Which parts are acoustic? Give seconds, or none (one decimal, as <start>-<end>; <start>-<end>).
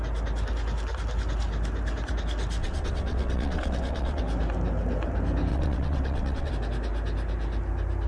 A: 0.0-2.6; 4.2-5.5; 6.5-8.1